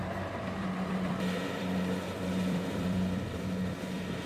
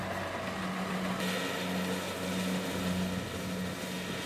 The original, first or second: second